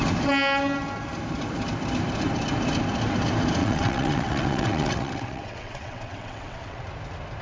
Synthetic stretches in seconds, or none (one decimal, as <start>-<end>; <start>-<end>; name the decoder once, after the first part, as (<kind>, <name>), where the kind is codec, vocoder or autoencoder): 3.6-6.8 (vocoder, WaveNeXt)